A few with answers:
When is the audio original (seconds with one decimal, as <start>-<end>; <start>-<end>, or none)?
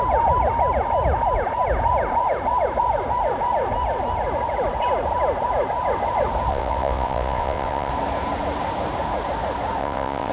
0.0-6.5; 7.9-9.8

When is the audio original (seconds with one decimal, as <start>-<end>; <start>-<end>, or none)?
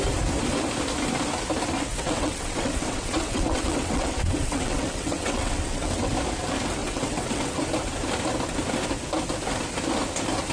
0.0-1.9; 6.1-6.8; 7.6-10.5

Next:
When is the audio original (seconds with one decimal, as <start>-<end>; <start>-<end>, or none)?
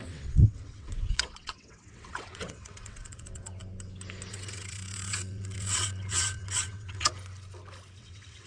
3.6-4.3; 7.1-8.0